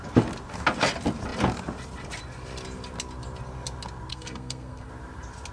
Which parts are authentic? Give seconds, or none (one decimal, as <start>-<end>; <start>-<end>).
0.0-4.1; 4.9-5.5